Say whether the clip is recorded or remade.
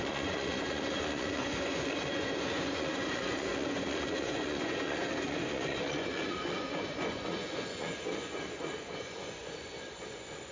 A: remade